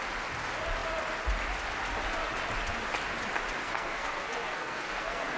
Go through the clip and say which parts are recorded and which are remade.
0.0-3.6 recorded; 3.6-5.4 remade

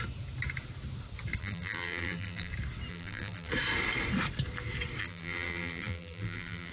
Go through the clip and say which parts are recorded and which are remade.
0.0-1.4 recorded; 1.4-2.5 remade; 2.5-2.9 recorded; 2.9-3.5 remade; 3.5-5.0 recorded; 5.0-6.7 remade

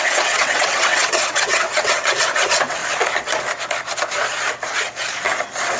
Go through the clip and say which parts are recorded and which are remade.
0.0-2.8 remade; 2.8-5.8 recorded

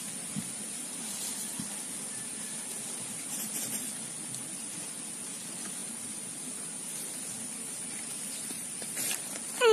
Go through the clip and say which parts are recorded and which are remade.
0.0-9.7 recorded

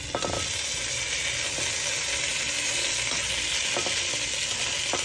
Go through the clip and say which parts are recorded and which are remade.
0.0-5.0 recorded